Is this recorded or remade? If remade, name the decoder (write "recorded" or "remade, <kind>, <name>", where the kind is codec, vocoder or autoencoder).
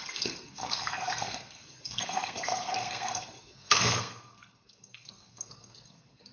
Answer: remade, codec, SNAC